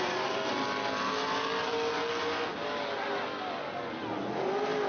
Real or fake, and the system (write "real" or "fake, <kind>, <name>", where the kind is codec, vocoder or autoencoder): real